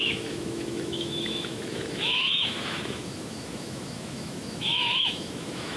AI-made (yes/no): yes